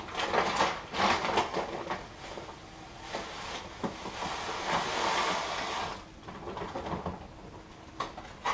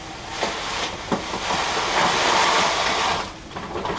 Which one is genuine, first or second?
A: first